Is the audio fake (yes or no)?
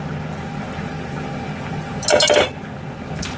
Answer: no